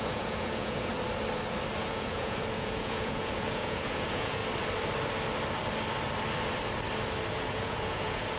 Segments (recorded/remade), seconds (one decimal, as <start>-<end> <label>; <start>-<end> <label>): 0.0-0.9 remade; 0.9-1.8 recorded; 1.8-4.4 remade; 4.4-7.3 recorded; 7.3-8.4 remade